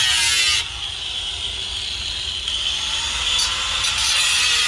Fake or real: real